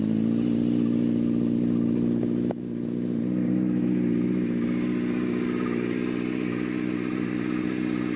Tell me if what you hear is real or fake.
real